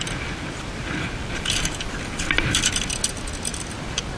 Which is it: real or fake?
real